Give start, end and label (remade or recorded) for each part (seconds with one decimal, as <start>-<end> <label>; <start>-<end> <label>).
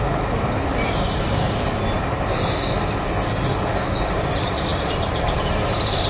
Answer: 0.0-4.7 recorded; 4.7-6.1 remade